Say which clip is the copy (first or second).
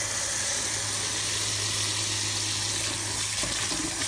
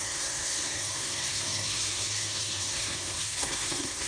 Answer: second